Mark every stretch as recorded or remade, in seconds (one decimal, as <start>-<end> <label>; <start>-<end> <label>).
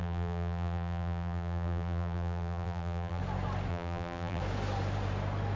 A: 0.0-3.2 remade; 3.2-3.7 recorded; 3.7-4.4 remade; 4.4-5.6 recorded